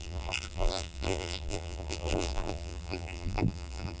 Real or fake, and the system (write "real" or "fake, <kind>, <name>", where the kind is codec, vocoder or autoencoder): fake, vocoder, BigVGAN v2